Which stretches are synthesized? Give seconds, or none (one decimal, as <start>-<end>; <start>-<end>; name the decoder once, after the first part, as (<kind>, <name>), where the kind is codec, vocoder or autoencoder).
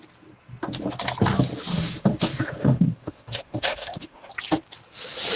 1.7-4.3 (autoencoder, DAC-VAE)